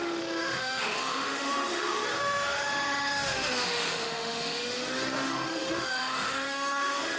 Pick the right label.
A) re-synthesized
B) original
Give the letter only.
A